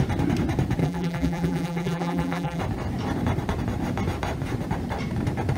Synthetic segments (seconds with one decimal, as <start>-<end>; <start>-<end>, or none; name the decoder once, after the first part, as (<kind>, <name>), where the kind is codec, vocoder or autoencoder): 0.8-2.6 (vocoder, BigVGAN v2)